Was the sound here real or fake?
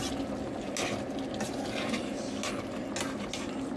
real